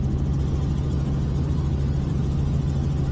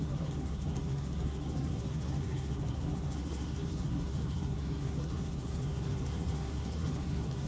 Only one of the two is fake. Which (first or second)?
second